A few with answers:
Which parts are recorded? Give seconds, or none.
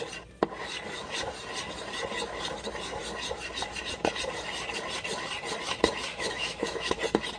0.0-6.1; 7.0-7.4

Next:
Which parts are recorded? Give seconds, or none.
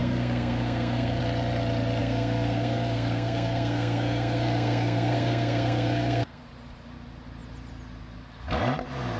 1.2-2.0; 6.4-9.2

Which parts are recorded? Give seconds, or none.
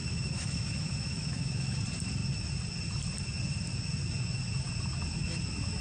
1.8-5.8